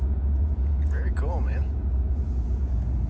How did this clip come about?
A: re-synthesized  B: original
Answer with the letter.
A